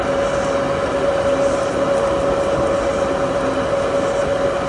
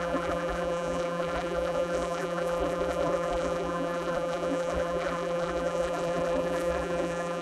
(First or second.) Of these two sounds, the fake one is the second